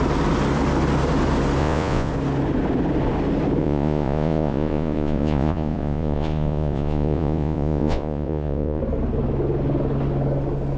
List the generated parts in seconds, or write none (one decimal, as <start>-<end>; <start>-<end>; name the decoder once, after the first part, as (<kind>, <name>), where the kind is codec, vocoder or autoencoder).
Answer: 1.6-2.1 (vocoder, Vocos); 3.6-8.8